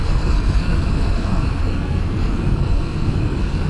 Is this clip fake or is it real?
fake